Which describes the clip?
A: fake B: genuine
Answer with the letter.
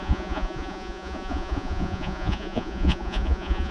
A